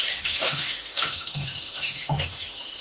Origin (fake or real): fake